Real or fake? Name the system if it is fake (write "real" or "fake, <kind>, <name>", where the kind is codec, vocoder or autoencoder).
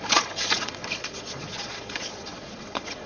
fake, vocoder, Vocos